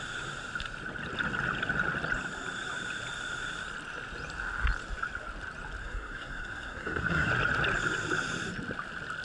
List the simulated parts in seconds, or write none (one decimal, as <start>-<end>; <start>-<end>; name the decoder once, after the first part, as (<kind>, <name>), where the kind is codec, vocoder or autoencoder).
5.8-7.3 (codec, SNAC)